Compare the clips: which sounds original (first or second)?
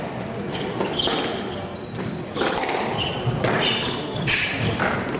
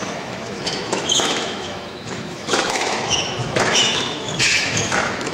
first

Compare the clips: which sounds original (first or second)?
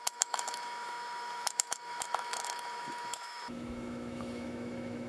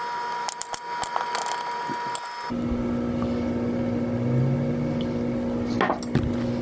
second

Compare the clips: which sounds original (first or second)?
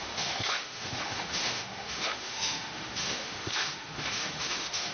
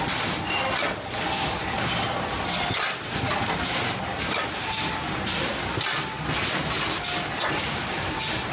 second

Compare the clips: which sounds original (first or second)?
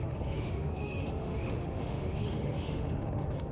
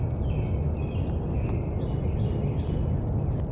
second